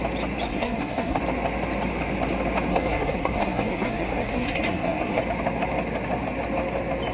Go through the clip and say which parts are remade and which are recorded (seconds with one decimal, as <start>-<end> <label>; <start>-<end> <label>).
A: 0.0-0.5 recorded; 0.5-1.2 remade; 1.2-2.7 recorded; 2.7-5.2 remade; 5.2-7.1 recorded